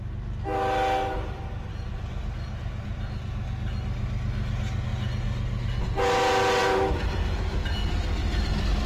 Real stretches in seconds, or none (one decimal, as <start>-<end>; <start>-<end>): 0.0-1.0; 1.7-6.6; 7.1-8.2